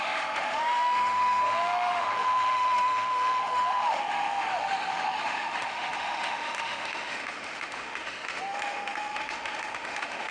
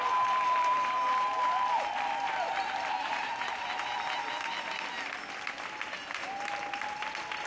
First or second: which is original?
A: second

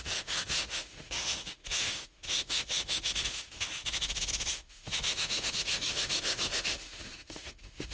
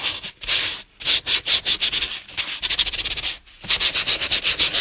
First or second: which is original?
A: second